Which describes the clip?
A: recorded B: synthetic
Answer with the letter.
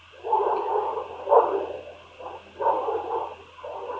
A